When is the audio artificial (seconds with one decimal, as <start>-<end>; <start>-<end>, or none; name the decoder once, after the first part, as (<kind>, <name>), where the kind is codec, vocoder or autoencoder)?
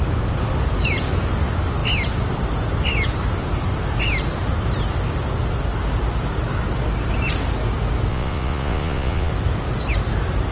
8.1-9.3 (vocoder, Vocos)